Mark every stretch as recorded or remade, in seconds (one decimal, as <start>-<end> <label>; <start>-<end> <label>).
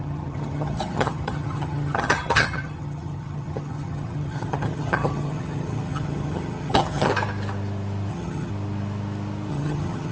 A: 0.0-7.1 remade; 7.1-8.1 recorded; 8.1-8.5 remade; 8.5-9.5 recorded; 9.5-10.1 remade